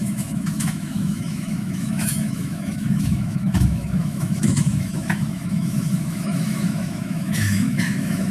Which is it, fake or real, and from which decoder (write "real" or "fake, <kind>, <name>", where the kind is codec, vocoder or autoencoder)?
fake, autoencoder, DAC-VAE